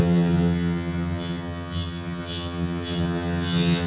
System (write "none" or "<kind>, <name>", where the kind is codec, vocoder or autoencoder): vocoder, HiFi-GAN